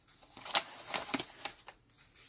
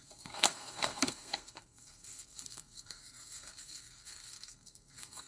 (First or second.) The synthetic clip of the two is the second